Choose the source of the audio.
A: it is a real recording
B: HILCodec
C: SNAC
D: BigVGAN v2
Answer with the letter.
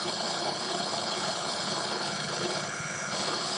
B